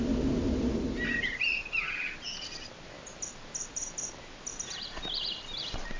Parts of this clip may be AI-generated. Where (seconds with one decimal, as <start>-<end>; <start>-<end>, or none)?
none